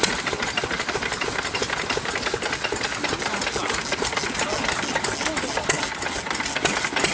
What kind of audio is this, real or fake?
real